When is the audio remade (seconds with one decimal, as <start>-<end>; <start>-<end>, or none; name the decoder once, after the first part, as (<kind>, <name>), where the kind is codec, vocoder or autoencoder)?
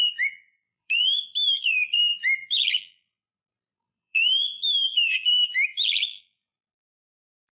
0.0-7.5 (vocoder, BigVGAN v2)